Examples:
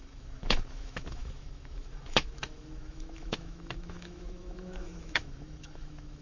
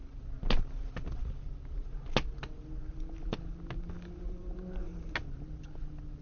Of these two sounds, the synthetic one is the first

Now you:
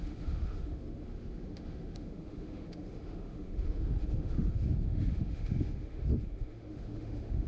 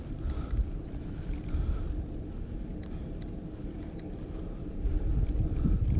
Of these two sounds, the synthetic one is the first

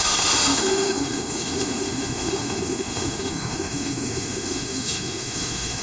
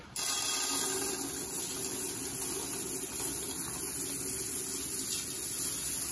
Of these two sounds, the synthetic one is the first